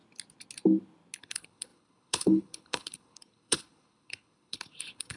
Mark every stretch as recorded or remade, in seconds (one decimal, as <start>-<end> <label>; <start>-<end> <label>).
0.0-1.2 recorded; 1.2-5.2 remade